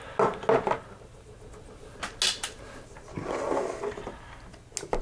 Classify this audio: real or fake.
real